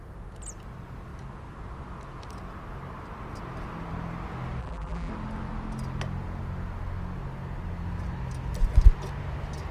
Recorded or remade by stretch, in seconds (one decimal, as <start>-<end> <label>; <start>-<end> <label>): 0.0-4.6 recorded; 4.6-5.1 remade; 5.1-9.7 recorded